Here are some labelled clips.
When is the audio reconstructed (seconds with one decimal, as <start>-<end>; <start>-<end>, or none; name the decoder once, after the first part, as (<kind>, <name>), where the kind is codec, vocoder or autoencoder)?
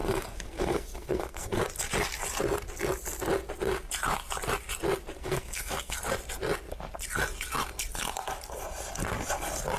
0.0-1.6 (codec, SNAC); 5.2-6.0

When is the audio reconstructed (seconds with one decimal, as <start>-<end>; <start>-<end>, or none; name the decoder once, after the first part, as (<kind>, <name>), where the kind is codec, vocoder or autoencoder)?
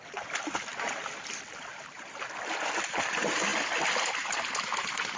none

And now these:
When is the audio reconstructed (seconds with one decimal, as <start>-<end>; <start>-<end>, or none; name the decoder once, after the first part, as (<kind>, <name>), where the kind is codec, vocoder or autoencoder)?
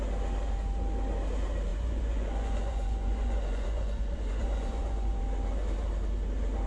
1.7-5.2 (vocoder, Vocos)